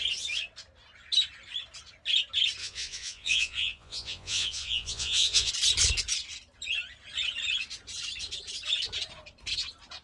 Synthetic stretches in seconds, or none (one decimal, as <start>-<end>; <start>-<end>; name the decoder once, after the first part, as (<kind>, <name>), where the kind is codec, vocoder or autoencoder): 2.6-5.5 (vocoder, Vocos)